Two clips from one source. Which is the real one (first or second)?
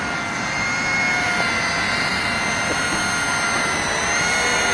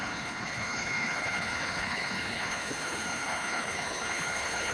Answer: first